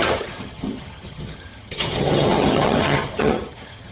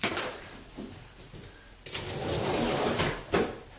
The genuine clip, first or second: second